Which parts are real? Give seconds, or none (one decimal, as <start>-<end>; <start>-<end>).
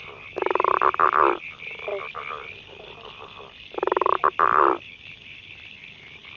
0.0-6.4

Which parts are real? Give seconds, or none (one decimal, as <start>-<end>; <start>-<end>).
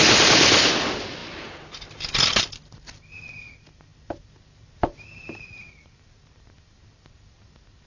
0.0-7.9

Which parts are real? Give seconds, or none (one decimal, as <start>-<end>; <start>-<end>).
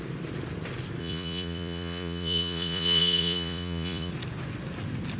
0.0-1.0; 4.1-5.2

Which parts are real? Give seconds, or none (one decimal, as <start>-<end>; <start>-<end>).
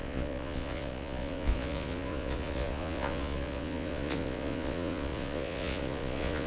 none